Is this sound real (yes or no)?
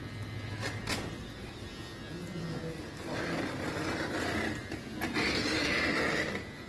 yes